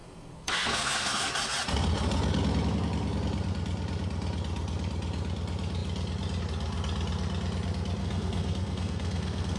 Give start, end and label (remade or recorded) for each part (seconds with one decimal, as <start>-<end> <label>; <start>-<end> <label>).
0.0-1.3 remade; 1.3-8.0 recorded; 8.0-9.6 remade